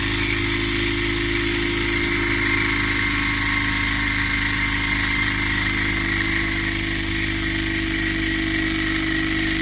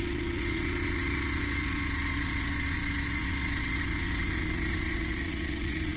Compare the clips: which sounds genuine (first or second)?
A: first